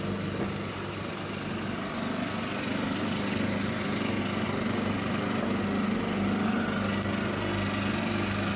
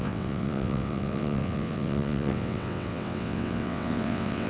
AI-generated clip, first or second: second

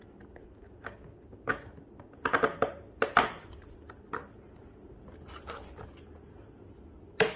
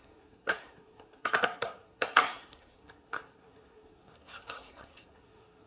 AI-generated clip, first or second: second